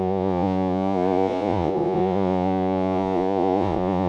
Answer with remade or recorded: remade